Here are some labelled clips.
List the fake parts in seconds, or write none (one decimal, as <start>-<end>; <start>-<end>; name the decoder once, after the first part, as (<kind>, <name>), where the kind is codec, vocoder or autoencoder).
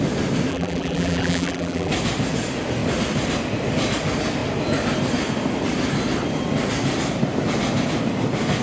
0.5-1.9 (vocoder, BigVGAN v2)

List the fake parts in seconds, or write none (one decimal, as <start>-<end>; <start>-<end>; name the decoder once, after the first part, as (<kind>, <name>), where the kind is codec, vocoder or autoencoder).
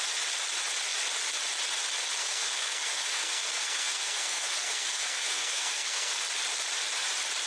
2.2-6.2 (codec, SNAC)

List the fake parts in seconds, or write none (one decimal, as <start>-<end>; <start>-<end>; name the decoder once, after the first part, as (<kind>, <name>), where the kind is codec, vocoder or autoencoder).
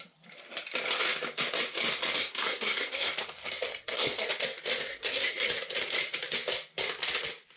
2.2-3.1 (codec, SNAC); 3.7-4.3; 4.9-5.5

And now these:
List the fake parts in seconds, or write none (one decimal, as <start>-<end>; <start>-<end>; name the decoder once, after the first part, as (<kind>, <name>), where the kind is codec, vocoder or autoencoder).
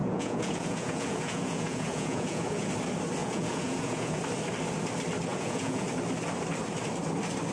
0.0-2.7 (vocoder, Vocos); 3.2-4.2; 5.3-5.9